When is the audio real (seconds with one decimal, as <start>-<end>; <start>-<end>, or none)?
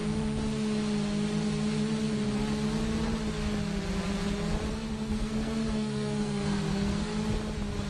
0.0-4.7; 7.1-7.9